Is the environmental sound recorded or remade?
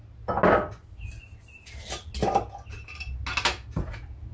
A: recorded